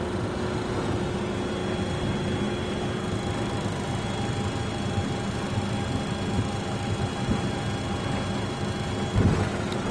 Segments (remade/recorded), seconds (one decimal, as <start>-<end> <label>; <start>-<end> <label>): 0.0-9.9 recorded